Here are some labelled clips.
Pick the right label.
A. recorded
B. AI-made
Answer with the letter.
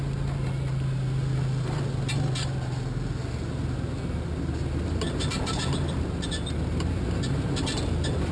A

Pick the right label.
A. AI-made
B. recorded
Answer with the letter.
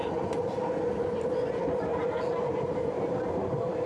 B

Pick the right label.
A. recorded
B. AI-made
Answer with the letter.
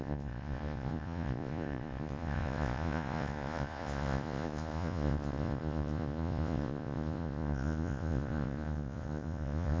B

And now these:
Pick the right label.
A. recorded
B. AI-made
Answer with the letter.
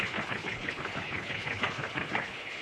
B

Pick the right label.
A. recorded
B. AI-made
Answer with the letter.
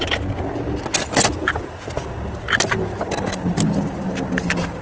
A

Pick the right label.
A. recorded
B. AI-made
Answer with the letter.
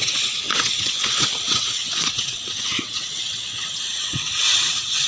B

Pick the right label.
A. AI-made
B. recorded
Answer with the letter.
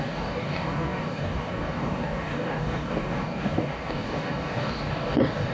A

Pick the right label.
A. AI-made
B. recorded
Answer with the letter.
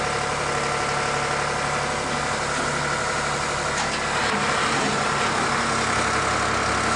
B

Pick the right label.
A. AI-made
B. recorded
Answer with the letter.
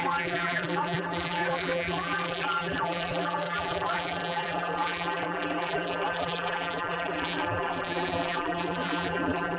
A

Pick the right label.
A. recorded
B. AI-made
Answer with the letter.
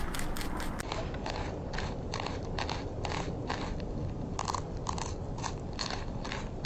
A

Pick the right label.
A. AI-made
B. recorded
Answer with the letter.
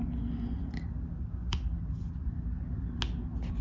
B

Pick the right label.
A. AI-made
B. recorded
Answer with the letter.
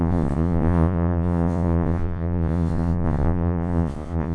A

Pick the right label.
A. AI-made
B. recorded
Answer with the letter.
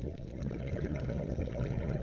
A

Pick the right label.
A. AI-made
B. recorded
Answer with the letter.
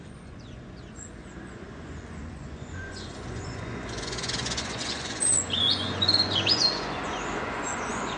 A